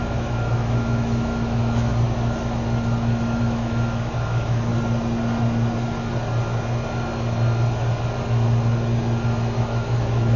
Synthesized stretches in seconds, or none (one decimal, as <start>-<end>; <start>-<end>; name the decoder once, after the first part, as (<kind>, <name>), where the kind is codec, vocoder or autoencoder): 0.0-1.9 (autoencoder, DAC-VAE); 3.4-4.7; 9.6-10.4